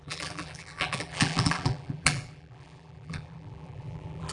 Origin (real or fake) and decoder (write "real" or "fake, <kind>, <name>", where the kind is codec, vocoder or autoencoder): fake, vocoder, BigVGAN v2